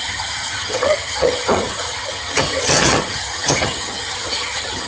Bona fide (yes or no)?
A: no